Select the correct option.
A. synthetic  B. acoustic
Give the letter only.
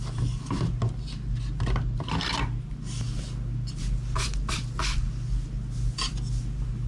B